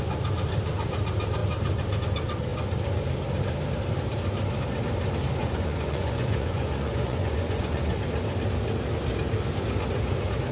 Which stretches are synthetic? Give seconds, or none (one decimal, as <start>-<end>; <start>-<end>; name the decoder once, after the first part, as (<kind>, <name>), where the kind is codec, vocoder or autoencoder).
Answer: 5.4-8.0 (vocoder, Vocos)